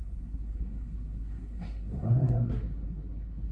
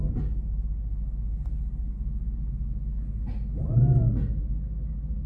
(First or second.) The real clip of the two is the second